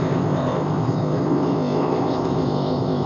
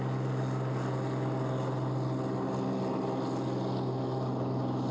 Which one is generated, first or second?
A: first